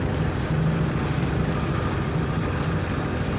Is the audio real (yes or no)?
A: yes